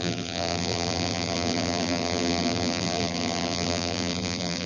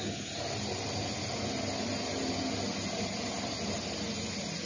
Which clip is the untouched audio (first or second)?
second